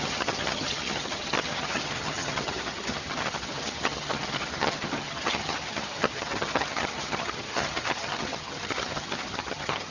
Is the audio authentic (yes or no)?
no